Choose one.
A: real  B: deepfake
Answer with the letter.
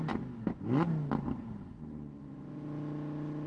A